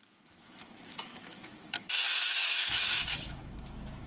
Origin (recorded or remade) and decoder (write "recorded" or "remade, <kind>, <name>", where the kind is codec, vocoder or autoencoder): remade, autoencoder, DAC-VAE